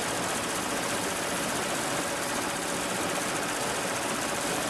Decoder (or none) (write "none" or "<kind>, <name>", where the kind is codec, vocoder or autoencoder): none